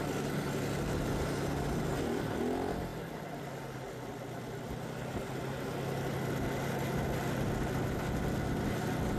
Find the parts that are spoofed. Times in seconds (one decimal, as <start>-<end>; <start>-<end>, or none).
2.9-3.5